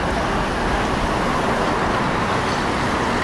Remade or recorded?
recorded